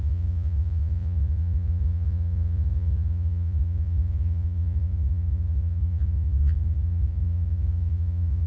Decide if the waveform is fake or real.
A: fake